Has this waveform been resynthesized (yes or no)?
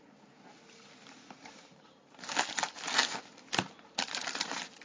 no